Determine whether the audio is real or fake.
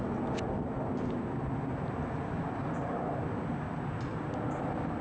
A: real